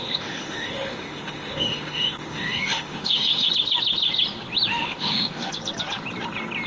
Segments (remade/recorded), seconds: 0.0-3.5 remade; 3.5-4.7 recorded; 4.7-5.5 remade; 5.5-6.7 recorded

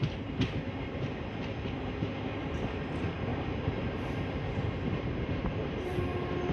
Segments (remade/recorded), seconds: 0.0-1.1 remade; 1.1-3.3 recorded; 3.3-6.0 remade; 6.0-6.5 recorded

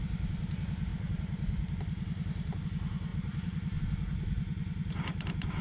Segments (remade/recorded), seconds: 0.0-0.9 recorded; 0.9-2.6 remade; 2.6-3.1 recorded; 3.1-3.8 remade; 3.8-5.6 recorded

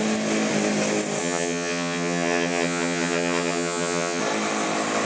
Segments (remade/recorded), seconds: 0.0-1.2 recorded; 1.2-4.2 remade; 4.2-5.0 recorded

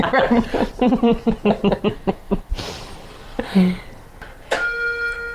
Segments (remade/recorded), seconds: 0.0-1.9 recorded; 1.9-2.5 remade; 2.5-5.3 recorded

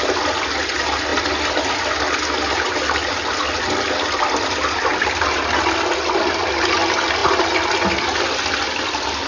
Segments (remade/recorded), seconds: 0.0-9.3 recorded